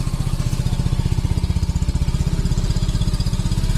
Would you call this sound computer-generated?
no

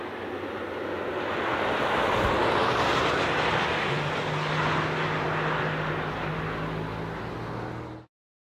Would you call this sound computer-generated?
no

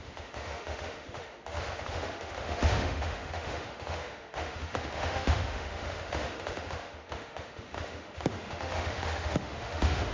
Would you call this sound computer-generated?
yes